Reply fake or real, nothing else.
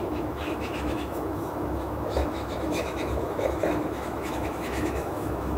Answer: fake